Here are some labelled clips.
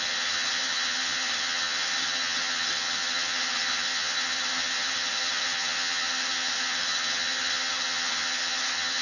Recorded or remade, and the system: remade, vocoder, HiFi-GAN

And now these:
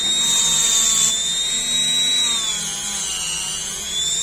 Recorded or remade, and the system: recorded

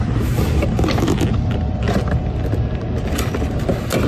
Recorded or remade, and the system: recorded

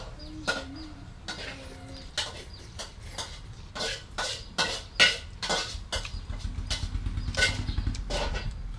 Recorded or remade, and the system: recorded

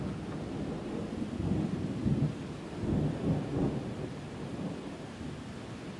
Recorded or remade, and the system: recorded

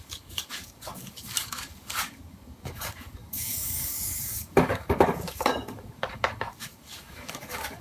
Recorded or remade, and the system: remade, codec, DAC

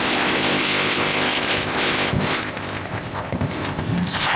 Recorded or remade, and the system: remade, codec, ZipCodec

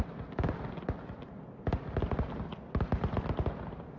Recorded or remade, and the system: recorded